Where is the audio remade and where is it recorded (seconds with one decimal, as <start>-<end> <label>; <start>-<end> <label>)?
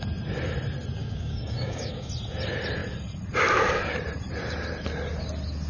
0.0-1.0 recorded; 1.0-2.1 remade; 2.1-5.7 recorded